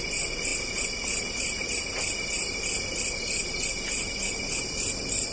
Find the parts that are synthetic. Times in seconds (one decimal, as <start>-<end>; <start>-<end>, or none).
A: none